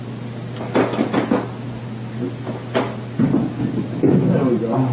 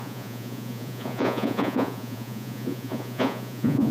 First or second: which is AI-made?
second